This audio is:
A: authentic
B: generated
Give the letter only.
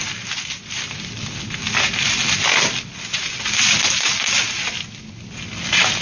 A